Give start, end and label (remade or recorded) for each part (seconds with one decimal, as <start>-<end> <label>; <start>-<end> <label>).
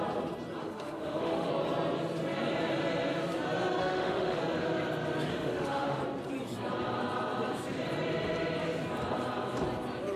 0.0-0.6 recorded; 0.6-1.5 remade; 1.5-3.8 recorded; 3.8-4.4 remade; 4.4-5.3 recorded; 5.3-6.0 remade; 6.0-10.2 recorded